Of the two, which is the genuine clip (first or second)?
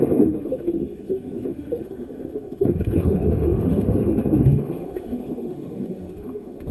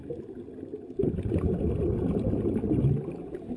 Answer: second